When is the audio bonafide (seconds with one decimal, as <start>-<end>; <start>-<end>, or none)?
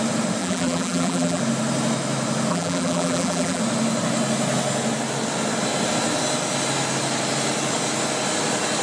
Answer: 0.0-0.4; 1.4-2.5; 3.6-8.8